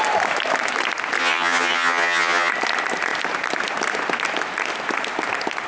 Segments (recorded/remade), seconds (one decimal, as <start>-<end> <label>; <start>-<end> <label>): 0.0-1.2 recorded; 1.2-2.5 remade; 2.5-5.7 recorded